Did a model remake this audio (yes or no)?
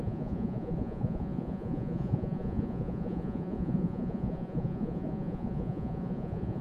yes